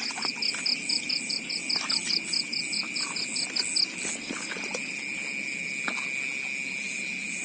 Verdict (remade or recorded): recorded